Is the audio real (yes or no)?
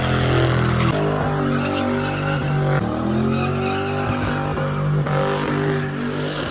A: yes